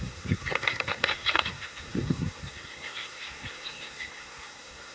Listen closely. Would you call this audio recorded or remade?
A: remade